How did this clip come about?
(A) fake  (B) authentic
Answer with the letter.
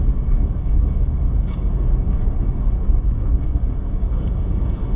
A